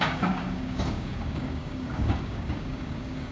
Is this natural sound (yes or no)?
no